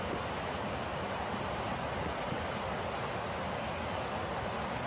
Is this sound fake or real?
real